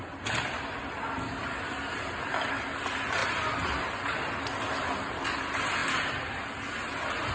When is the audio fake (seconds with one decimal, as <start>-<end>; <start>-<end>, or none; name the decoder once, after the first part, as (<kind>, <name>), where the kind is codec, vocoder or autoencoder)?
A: none